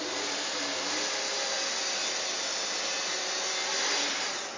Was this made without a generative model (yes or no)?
yes